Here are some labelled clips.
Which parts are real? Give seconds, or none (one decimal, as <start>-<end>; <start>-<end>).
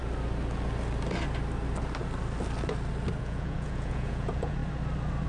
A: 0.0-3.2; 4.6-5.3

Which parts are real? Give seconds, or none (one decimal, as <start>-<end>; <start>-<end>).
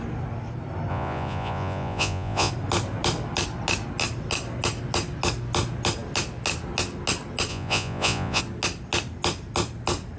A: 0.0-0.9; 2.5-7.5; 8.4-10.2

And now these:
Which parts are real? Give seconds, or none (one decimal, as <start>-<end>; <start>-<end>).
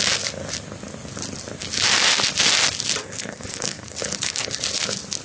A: 0.0-3.0; 4.6-5.2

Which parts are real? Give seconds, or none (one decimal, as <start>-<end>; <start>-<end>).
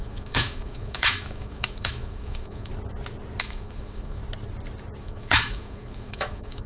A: 2.7-3.4; 4.2-5.0